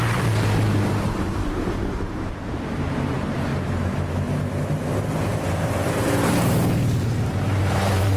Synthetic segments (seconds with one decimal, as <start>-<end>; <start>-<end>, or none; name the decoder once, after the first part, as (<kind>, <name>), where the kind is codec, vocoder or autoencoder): 0.0-3.5 (vocoder, BigVGAN v2); 6.3-8.2